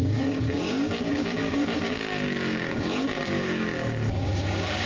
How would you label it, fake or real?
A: fake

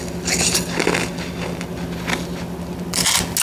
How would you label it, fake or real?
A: real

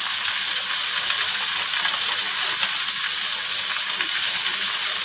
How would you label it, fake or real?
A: real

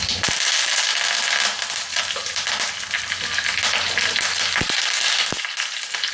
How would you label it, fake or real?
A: real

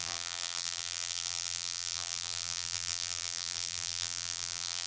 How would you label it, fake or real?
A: fake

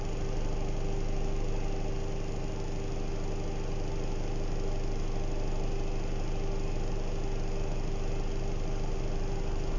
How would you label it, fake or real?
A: real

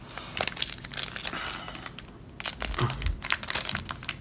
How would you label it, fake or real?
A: real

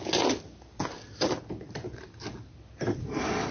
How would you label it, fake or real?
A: real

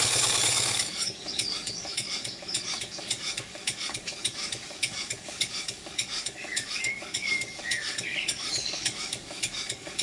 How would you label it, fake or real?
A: fake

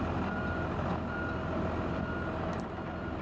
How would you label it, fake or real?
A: real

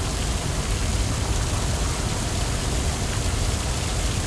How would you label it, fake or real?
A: real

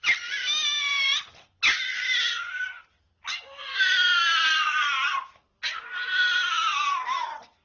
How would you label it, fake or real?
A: real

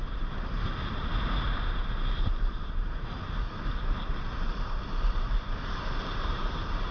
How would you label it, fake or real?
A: fake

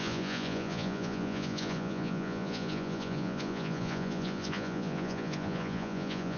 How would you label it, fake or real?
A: fake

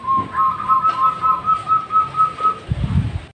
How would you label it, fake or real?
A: real